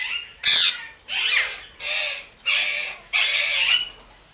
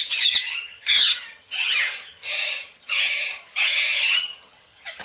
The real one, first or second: first